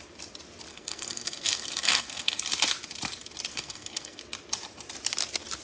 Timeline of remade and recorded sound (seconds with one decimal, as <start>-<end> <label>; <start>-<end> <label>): 0.0-0.7 recorded; 0.7-2.4 remade; 2.4-3.5 recorded; 3.5-4.2 remade; 4.2-5.6 recorded